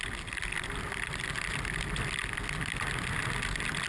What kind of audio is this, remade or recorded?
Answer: recorded